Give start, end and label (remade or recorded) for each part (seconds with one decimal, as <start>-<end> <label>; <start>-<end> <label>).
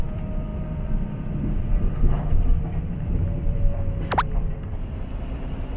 0.0-5.8 remade